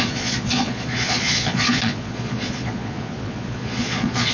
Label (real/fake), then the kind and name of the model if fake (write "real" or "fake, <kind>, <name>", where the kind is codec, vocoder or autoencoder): fake, vocoder, Vocos